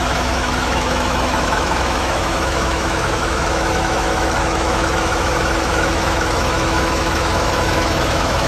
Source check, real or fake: fake